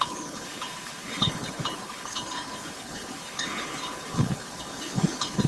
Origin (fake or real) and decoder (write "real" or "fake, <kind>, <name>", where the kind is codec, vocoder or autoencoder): fake, codec, HILCodec